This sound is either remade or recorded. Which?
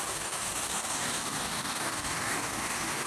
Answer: remade